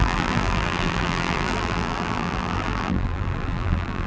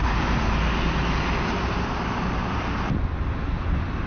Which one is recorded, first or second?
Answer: second